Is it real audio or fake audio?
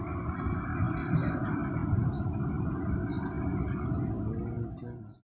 real